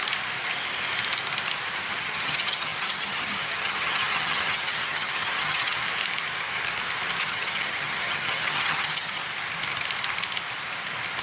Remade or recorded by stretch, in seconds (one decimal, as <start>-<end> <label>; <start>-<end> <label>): 0.0-1.9 recorded; 1.9-5.8 remade; 5.8-7.2 recorded; 7.2-9.2 remade; 9.2-11.2 recorded